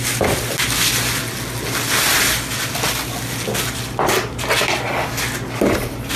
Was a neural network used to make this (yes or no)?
no